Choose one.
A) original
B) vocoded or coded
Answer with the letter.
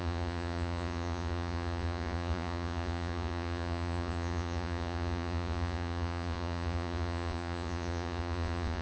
B